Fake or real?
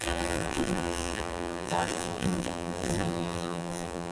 fake